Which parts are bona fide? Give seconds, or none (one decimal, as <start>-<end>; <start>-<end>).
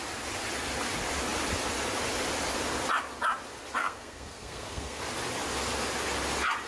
0.0-3.8; 5.0-6.7